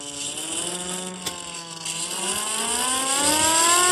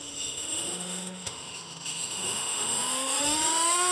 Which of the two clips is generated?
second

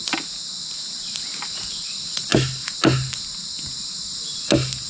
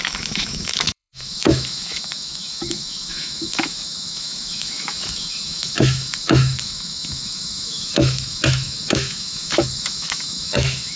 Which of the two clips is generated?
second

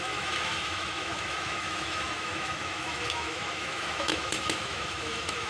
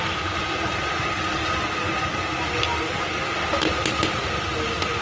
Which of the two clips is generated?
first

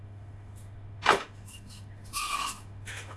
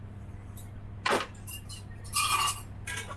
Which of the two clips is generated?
first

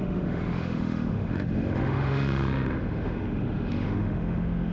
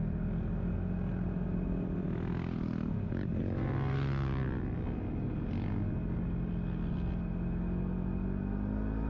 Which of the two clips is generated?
first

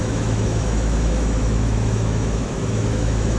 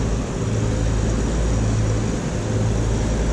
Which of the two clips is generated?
first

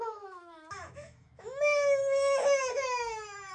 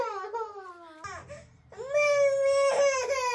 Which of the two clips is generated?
first